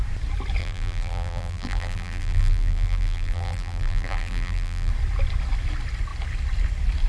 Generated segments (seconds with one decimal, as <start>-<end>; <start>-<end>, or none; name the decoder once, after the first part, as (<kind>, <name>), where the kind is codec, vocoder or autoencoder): 0.6-4.9 (vocoder, BigVGAN v2)